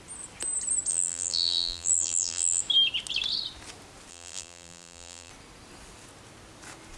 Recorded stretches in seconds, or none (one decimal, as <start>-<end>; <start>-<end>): 0.0-0.9; 2.6-4.1; 5.3-7.0